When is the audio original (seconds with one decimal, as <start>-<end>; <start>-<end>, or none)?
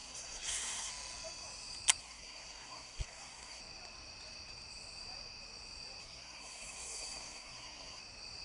0.9-2.0; 3.6-6.0; 8.0-8.4